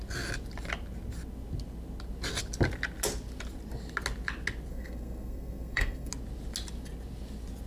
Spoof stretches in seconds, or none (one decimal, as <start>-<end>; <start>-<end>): 4.7-6.1